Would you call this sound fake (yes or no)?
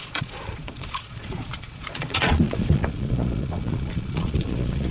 yes